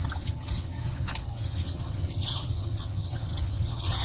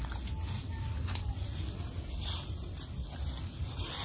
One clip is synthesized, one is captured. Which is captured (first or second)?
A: second